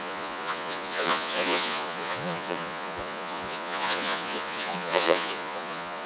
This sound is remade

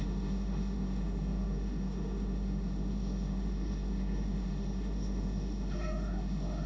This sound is remade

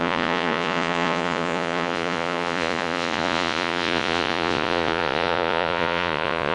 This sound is remade